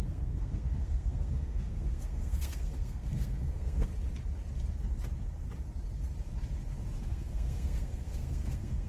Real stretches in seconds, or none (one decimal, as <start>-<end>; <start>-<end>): 3.9-7.0